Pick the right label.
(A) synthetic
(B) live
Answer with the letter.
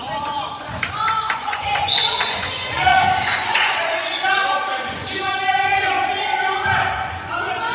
A